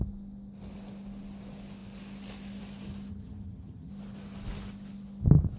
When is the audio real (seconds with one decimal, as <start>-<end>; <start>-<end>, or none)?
0.0-3.1; 3.9-5.6